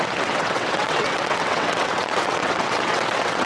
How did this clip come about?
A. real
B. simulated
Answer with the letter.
B